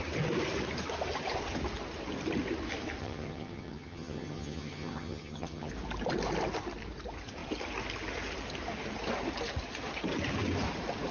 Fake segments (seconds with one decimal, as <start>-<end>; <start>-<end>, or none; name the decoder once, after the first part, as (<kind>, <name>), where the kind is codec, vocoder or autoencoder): 3.0-5.7 (vocoder, HiFi-GAN)